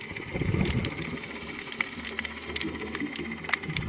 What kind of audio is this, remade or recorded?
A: recorded